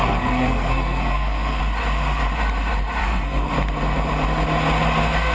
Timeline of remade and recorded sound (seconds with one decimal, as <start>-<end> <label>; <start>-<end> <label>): 0.0-1.6 remade; 1.6-3.0 recorded; 3.0-3.5 remade; 3.5-5.3 recorded